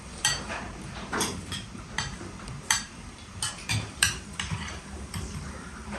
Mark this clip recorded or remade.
remade